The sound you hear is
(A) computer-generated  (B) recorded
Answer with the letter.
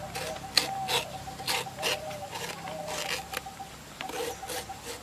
B